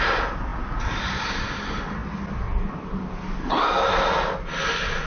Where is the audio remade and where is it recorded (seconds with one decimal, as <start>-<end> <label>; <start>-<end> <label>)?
0.0-5.1 recorded